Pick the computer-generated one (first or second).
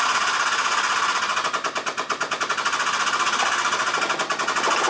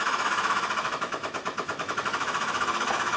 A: second